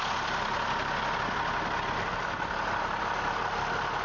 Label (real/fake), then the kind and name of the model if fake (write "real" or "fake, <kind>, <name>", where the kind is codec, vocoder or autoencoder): real